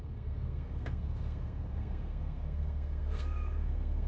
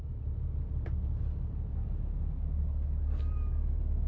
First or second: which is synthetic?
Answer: first